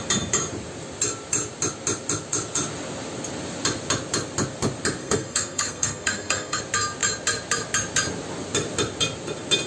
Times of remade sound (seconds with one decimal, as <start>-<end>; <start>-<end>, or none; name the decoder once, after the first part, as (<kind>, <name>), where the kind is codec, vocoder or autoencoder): 5.0-6.6 (codec, SNAC)